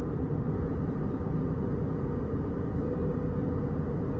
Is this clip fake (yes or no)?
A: no